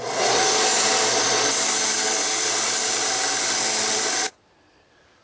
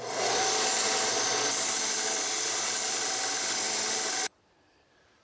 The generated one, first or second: second